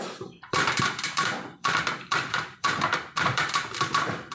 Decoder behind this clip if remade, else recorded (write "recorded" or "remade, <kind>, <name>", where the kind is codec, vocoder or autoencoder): remade, vocoder, BigVGAN v2